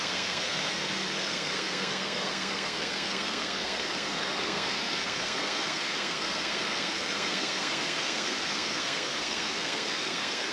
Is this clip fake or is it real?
fake